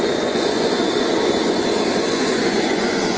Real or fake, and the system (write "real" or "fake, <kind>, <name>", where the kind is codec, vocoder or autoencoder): fake, vocoder, Vocos